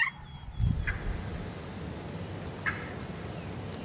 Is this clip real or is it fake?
real